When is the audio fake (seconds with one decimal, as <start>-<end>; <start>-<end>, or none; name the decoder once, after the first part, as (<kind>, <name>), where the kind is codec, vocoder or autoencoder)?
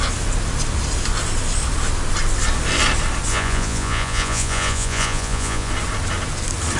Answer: 3.3-5.7 (vocoder, Vocos)